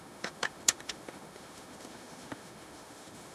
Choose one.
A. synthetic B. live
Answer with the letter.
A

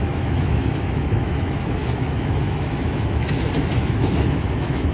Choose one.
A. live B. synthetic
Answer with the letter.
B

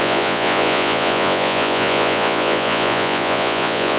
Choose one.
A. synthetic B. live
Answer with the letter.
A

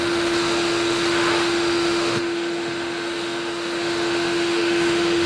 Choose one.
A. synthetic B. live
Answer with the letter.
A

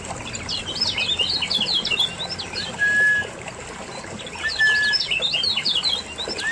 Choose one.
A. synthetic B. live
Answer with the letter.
B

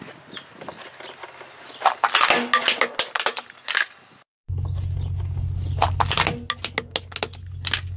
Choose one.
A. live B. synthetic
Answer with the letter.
A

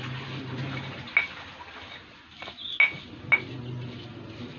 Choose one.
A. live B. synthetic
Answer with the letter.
A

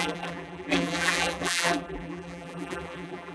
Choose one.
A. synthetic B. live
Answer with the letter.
A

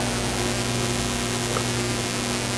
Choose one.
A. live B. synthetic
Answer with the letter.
A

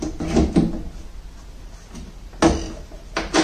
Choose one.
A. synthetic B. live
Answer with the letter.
B